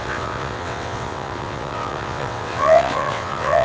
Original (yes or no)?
no